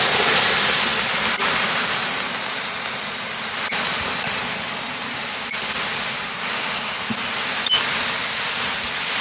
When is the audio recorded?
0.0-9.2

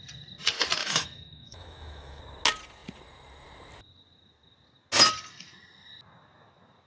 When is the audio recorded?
0.0-0.8; 2.2-6.9

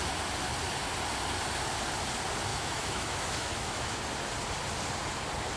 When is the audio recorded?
0.0-2.5; 4.0-5.6

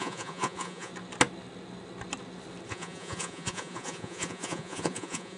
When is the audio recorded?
0.9-2.7

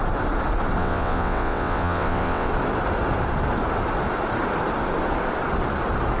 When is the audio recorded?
0.0-0.8; 2.5-6.2

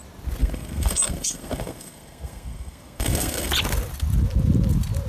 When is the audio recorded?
0.0-0.4; 3.5-5.1

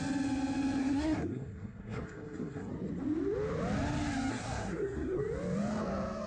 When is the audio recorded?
0.0-0.8; 2.7-4.3; 5.2-6.3